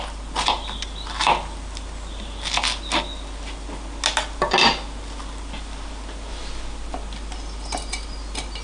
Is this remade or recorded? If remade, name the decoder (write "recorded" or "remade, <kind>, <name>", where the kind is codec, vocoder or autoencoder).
recorded